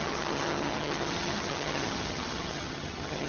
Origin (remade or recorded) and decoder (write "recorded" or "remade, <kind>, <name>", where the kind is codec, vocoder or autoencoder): remade, vocoder, HiFi-GAN